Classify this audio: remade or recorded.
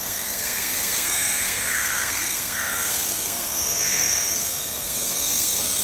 remade